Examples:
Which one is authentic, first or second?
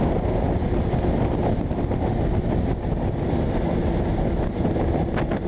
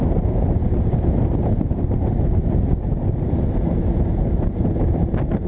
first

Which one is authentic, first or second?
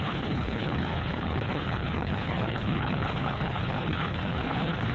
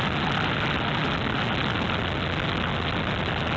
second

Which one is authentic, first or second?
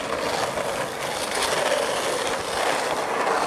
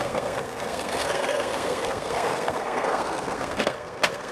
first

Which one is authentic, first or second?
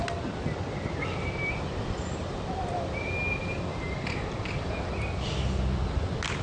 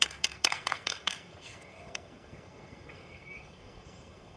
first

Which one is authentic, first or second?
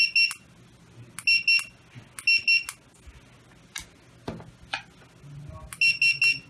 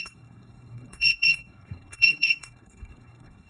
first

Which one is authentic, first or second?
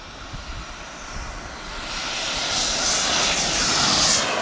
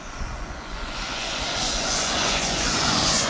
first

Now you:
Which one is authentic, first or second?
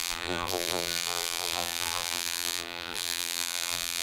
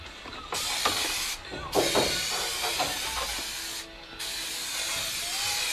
second